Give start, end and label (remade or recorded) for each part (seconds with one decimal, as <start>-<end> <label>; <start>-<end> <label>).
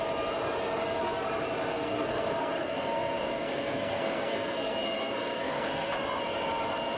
0.0-1.7 recorded; 1.7-5.9 remade; 5.9-7.0 recorded